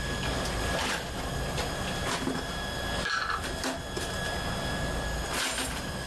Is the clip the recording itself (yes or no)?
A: yes